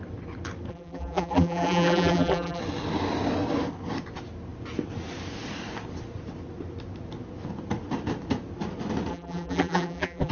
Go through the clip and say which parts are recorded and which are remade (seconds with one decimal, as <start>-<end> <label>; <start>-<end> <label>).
0.0-0.7 recorded; 0.7-2.6 remade; 2.6-9.1 recorded; 9.1-10.3 remade

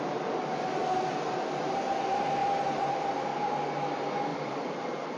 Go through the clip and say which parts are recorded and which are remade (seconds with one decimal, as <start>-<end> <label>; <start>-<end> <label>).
0.0-4.3 recorded; 4.3-4.8 remade; 4.8-5.2 recorded

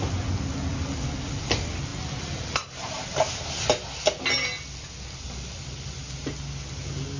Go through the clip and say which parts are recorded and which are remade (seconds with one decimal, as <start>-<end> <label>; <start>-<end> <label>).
0.0-7.2 recorded

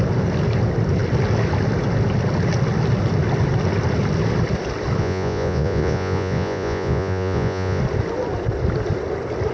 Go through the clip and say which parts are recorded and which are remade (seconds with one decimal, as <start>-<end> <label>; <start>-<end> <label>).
0.0-5.0 recorded; 5.0-7.8 remade; 7.8-9.5 recorded

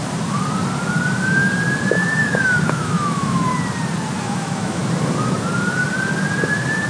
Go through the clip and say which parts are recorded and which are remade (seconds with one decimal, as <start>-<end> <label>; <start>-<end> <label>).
0.0-2.2 recorded; 2.2-3.5 remade; 3.5-4.2 recorded; 4.2-4.8 remade; 4.8-6.9 recorded

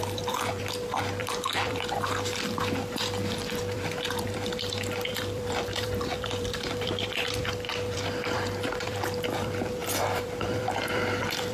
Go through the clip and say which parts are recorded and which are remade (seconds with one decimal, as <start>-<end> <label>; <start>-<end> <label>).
0.0-11.5 remade